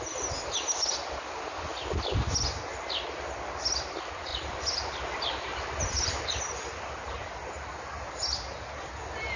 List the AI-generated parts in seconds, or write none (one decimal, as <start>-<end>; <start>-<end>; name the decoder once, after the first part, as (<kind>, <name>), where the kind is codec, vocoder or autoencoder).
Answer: none